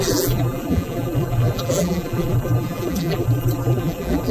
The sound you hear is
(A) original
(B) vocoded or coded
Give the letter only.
B